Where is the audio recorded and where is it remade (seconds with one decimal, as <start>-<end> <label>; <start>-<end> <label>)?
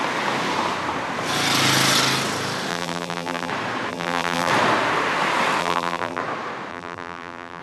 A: 0.0-2.7 recorded; 2.7-3.5 remade; 3.5-3.9 recorded; 3.9-4.5 remade; 4.5-5.6 recorded; 5.6-6.2 remade; 6.2-6.7 recorded; 6.7-7.6 remade